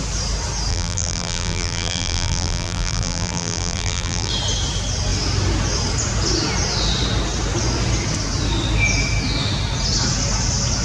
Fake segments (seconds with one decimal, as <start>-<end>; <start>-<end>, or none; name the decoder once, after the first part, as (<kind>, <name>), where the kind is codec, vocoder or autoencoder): 0.7-4.3 (vocoder, BigVGAN v2)